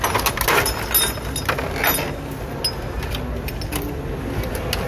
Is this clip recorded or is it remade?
recorded